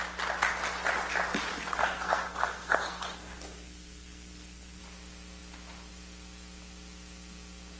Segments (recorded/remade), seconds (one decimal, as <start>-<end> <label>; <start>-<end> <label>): 0.0-1.5 recorded; 1.5-4.8 remade; 4.8-7.8 recorded